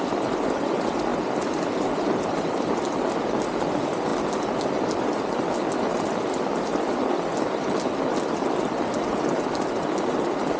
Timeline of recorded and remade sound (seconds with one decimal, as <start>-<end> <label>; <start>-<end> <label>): 0.0-10.6 recorded